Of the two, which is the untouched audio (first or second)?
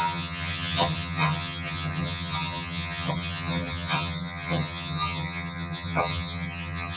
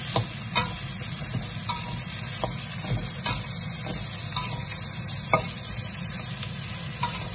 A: second